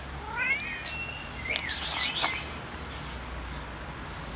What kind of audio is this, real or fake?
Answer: real